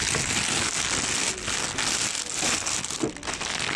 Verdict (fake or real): real